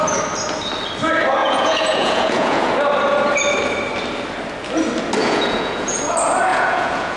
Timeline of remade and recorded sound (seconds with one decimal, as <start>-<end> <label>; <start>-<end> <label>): 0.0-1.4 recorded; 1.4-2.7 remade; 2.7-5.2 recorded; 5.2-6.0 remade; 6.0-6.5 recorded; 6.5-7.2 remade